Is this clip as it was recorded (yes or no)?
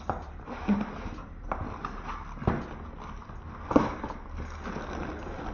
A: yes